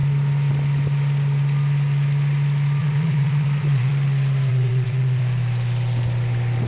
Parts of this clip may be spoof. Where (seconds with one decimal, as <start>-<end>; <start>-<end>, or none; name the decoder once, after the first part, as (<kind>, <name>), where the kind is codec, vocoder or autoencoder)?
2.8-3.9 (vocoder, Vocos); 4.5-5.2